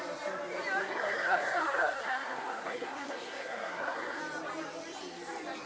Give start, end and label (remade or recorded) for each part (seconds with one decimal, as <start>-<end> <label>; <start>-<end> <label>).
0.0-0.8 recorded; 0.8-4.2 remade; 4.2-5.7 recorded

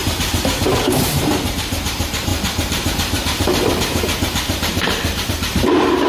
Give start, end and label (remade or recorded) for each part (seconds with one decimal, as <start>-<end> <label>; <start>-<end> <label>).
0.0-1.5 recorded; 1.5-6.1 remade

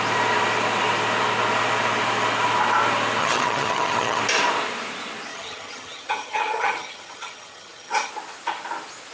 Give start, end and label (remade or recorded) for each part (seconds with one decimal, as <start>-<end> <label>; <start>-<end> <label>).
0.0-3.2 recorded; 3.2-4.2 remade; 4.2-5.3 recorded; 5.3-8.1 remade; 8.1-9.1 recorded

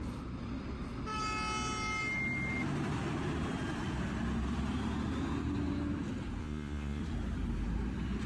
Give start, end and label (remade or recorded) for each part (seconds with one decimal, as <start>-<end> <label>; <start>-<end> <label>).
0.0-6.4 recorded; 6.4-7.0 remade; 7.0-8.3 recorded

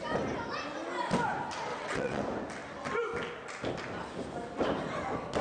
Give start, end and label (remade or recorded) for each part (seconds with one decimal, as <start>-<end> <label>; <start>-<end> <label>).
0.0-1.7 recorded; 1.7-2.2 remade; 2.2-5.4 recorded